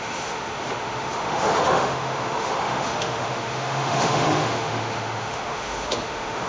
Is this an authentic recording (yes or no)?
no